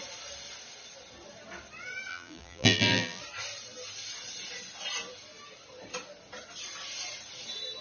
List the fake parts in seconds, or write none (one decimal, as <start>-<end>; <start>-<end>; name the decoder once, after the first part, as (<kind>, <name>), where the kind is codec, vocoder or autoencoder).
2.1-3.2 (vocoder, BigVGAN v2)